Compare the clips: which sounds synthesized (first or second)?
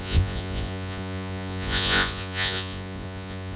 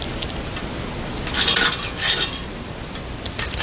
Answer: first